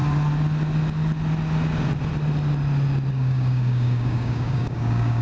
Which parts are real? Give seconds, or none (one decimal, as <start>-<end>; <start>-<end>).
0.0-3.1